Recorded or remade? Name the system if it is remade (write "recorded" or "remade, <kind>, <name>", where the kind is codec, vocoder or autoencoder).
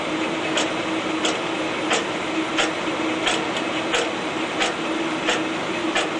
recorded